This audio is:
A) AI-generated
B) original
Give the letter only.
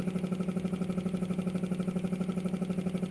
B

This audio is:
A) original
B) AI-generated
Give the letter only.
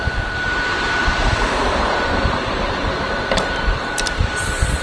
B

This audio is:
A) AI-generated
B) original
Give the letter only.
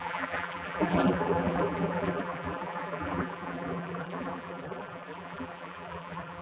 A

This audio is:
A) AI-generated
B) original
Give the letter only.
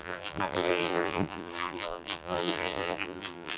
A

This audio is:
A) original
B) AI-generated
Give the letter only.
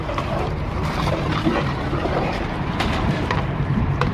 B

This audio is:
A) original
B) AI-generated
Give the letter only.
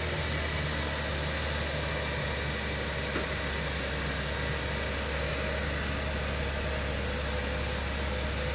A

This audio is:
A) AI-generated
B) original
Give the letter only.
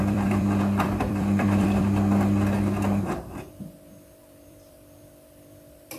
A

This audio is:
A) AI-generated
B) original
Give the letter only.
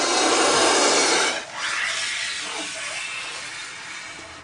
B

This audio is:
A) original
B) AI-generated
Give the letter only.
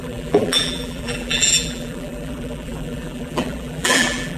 B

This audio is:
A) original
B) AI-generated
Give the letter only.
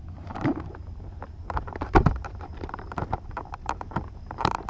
B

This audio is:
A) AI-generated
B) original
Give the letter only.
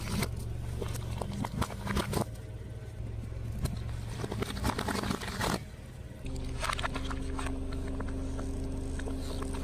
B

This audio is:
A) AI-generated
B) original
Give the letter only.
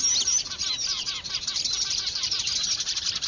A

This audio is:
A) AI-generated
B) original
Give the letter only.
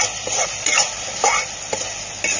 B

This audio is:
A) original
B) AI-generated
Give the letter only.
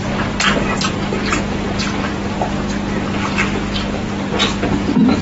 A